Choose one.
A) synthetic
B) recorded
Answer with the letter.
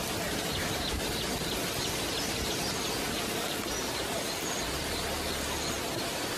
B